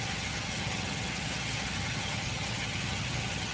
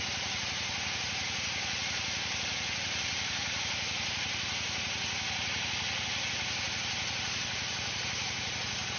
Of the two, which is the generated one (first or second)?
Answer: first